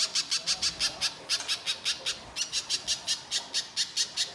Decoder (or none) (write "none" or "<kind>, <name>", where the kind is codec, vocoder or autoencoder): none